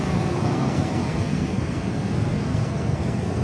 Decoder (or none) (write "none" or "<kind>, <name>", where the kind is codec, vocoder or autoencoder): codec, SNAC